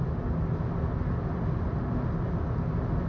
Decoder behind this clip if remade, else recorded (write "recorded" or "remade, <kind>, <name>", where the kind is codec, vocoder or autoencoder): recorded